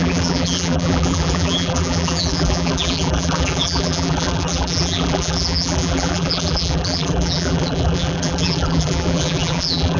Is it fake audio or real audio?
fake